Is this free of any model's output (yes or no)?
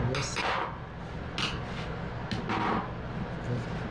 yes